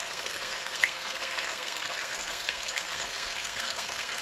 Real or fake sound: fake